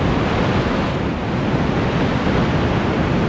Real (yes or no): yes